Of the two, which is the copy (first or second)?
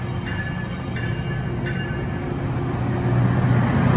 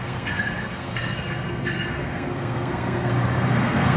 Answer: second